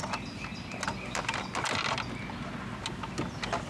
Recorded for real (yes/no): yes